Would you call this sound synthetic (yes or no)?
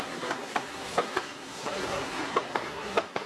yes